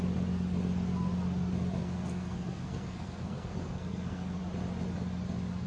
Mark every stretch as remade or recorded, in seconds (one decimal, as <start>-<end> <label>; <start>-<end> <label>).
0.0-1.8 recorded; 1.8-4.4 remade; 4.4-5.7 recorded